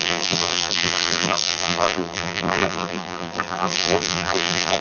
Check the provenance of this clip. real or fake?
fake